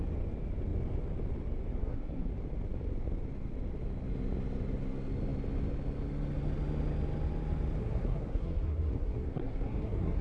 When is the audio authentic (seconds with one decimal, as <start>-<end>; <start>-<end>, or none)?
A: 0.0-1.8; 2.3-7.8